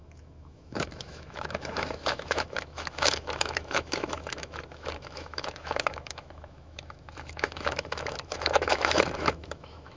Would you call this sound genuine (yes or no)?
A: no